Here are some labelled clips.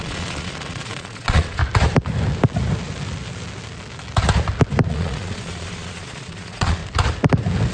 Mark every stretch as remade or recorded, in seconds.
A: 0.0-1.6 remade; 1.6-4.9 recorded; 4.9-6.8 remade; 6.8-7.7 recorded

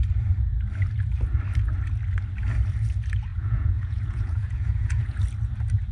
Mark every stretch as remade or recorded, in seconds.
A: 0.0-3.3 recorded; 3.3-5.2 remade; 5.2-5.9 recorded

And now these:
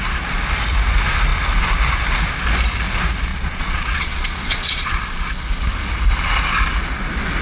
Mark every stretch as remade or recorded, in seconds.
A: 0.0-3.3 recorded; 3.3-5.4 remade; 5.4-7.4 recorded

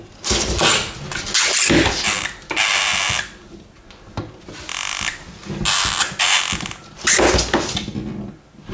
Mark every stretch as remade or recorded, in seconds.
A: 0.0-8.7 recorded

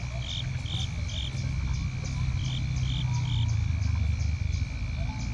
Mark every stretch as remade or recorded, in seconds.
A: 0.0-5.3 recorded

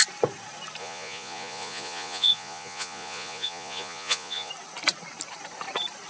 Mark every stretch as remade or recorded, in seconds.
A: 0.0-0.8 recorded; 0.8-4.5 remade; 4.5-6.1 recorded